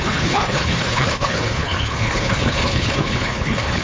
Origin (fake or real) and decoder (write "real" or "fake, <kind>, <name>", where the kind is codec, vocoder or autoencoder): fake, codec, HILCodec